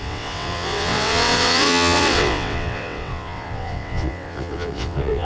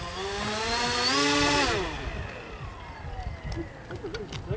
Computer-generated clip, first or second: first